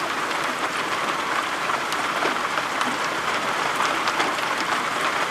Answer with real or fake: fake